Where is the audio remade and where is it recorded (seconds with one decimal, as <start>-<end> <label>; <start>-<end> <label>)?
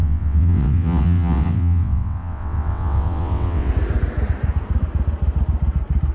0.0-3.7 remade; 3.7-6.1 recorded